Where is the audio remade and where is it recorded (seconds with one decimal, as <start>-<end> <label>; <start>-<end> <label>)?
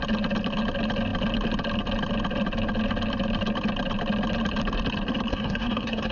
0.0-5.3 recorded; 5.3-6.1 remade